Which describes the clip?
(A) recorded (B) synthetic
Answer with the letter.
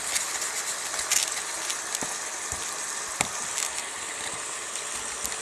A